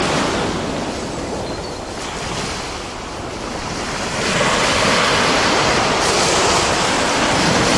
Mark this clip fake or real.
real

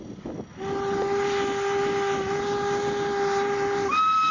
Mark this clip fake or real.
real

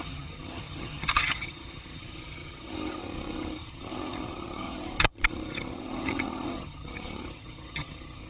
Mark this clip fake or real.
fake